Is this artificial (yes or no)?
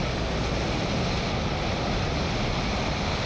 no